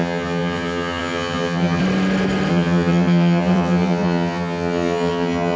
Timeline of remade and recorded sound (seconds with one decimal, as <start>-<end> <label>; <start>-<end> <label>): 0.0-1.8 remade; 1.8-2.5 recorded; 2.5-5.6 remade